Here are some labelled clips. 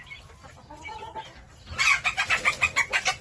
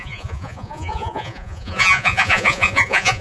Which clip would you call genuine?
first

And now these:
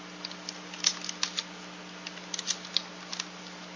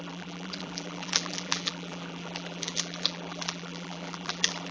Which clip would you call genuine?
first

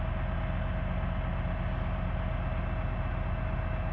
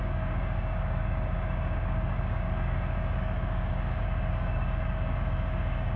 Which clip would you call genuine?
first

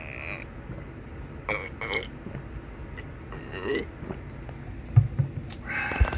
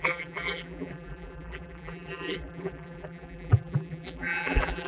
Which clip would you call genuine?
first